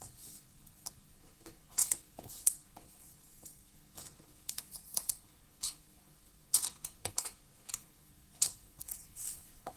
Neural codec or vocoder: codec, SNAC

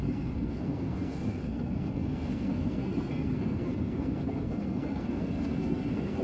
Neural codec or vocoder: codec, SNAC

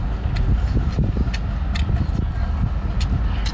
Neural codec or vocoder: none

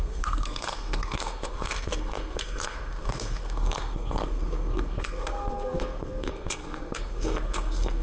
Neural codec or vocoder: codec, SNAC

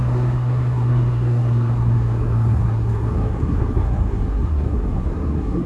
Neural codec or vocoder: codec, SNAC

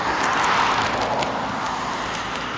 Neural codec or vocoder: none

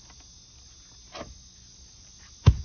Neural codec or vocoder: none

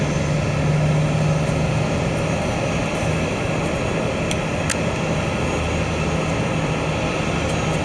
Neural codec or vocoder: none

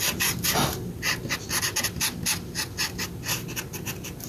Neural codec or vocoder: none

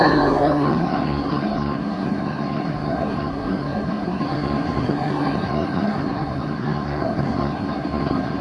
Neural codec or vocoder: codec, SNAC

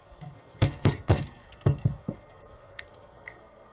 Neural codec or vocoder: codec, SNAC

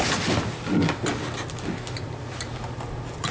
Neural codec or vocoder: none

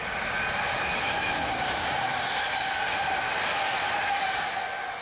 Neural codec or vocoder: none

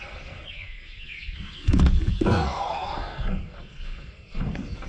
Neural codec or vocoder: codec, SNAC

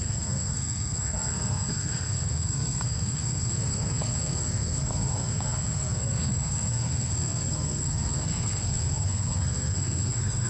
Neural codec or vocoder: codec, SNAC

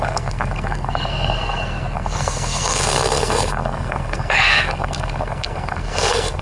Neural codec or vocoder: codec, SNAC